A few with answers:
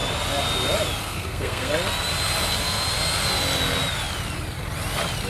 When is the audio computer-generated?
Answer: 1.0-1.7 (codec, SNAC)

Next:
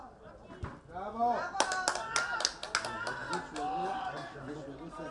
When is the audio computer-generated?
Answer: none

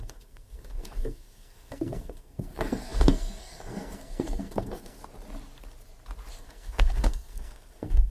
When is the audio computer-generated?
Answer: 0.0-5.0 (codec, SNAC); 6.4-8.1

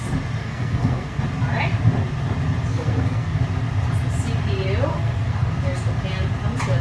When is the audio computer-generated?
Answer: 0.4-1.2 (codec, SNAC); 2.7-3.4; 4.9-5.6